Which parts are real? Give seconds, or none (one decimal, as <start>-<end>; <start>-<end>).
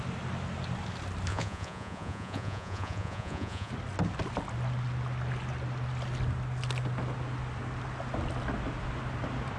0.0-1.3; 3.7-9.6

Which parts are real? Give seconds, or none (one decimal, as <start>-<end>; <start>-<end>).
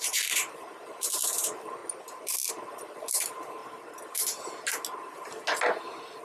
1.8-2.5; 3.6-6.2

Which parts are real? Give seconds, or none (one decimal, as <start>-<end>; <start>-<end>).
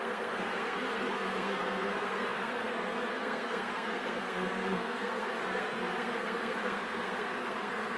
none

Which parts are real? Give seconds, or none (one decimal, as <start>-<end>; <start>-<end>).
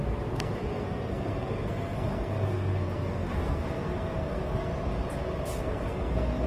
4.7-5.6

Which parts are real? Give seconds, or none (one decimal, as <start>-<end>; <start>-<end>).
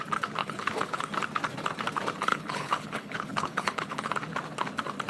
0.0-0.4; 1.0-2.3; 4.1-5.1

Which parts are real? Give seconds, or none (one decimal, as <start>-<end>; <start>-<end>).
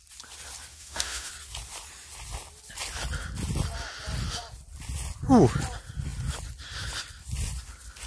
0.0-0.7; 1.3-8.1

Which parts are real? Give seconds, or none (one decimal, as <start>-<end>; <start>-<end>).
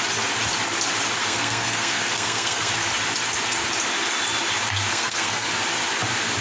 0.0-1.2; 2.7-4.9; 5.5-6.4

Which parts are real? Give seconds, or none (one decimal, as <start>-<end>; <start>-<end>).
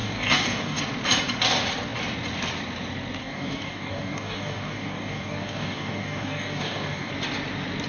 0.8-3.2; 7.1-7.9